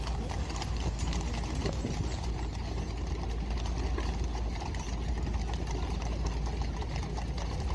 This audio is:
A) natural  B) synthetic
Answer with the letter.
A